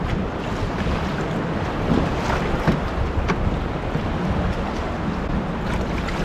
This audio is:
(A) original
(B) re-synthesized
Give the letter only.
A